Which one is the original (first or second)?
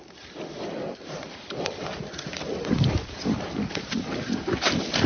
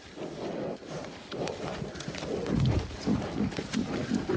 second